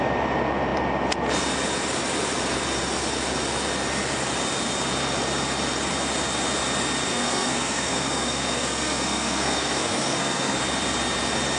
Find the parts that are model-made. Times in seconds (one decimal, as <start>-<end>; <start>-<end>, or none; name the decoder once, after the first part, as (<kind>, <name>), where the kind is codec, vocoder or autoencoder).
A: 7.1-10.6 (codec, SNAC)